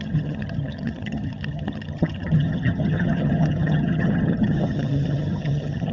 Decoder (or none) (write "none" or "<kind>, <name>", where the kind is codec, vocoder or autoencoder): vocoder, HiFi-GAN